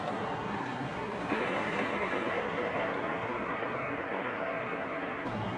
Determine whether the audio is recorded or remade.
remade